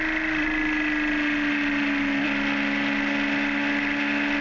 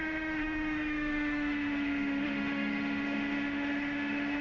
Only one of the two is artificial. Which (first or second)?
second